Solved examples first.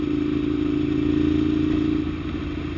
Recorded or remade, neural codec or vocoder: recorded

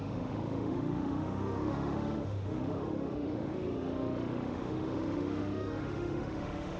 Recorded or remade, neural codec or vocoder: remade, autoencoder, DAC-VAE